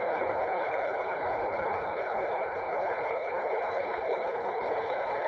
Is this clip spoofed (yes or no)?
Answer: yes